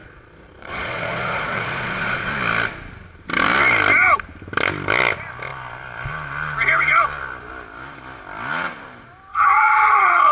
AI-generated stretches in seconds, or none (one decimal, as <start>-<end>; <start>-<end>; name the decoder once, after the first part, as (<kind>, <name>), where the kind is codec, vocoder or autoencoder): 0.0-2.3 (vocoder, Vocos); 9.3-10.3